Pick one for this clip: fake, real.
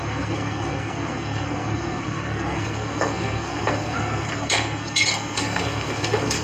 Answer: fake